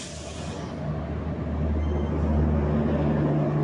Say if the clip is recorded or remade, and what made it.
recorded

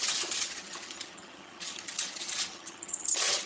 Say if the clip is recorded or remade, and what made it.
remade, vocoder, HiFi-GAN